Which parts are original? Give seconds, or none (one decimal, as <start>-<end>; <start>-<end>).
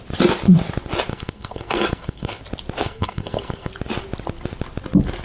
0.0-1.1; 2.4-2.8; 3.7-5.2